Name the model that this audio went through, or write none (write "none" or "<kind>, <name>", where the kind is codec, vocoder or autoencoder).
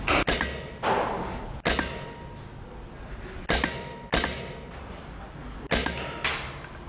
none